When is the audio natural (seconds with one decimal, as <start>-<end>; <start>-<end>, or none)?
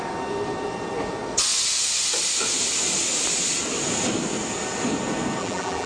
0.0-5.4